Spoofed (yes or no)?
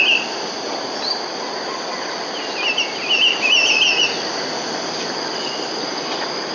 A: no